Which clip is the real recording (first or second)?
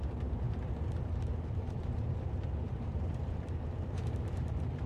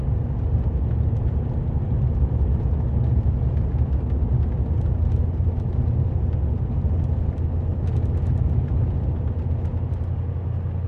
second